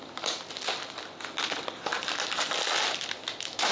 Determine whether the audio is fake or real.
real